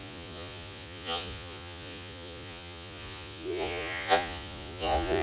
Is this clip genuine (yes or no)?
no